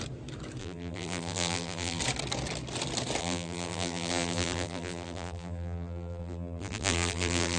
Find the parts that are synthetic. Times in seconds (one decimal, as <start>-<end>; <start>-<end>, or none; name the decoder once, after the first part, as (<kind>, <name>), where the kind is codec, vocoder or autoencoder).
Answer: 0.6-2.0 (vocoder, BigVGAN v2); 3.2-7.6